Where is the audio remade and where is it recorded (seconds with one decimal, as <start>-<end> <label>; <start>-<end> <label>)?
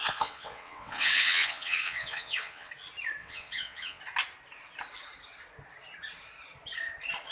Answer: 0.0-2.7 remade; 2.7-3.2 recorded; 3.2-4.0 remade; 4.0-7.3 recorded